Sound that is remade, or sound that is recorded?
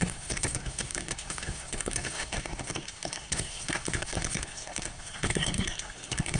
remade